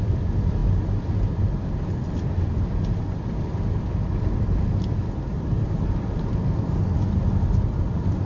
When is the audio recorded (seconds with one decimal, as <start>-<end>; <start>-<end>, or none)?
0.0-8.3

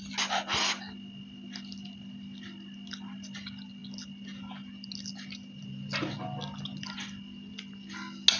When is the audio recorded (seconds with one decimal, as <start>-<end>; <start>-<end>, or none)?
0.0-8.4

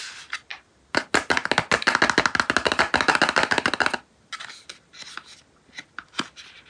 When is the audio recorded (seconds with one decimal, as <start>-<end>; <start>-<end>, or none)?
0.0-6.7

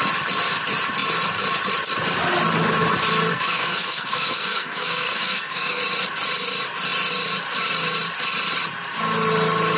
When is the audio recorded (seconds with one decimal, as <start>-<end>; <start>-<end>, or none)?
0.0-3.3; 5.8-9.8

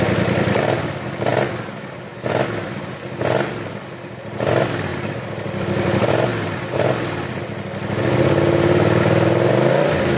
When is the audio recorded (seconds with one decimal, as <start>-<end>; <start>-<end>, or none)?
1.3-4.5; 6.3-9.7

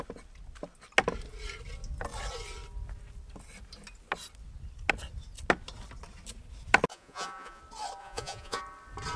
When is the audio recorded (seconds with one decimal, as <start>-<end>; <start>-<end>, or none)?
0.0-6.9; 7.6-8.0; 8.6-9.2

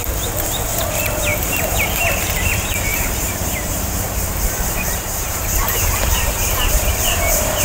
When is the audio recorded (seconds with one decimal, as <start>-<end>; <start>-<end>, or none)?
0.0-1.3; 2.0-2.9